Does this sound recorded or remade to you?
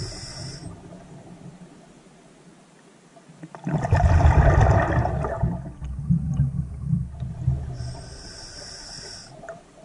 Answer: recorded